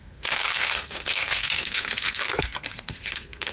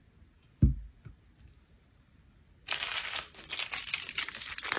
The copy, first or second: first